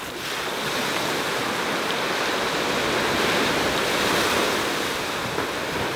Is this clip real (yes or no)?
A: yes